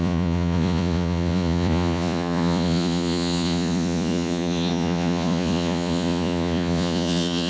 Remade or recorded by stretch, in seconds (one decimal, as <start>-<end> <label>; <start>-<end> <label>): 0.0-7.5 remade